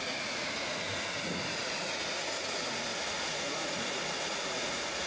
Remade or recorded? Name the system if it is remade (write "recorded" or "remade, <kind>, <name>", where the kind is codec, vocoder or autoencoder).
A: remade, vocoder, Vocos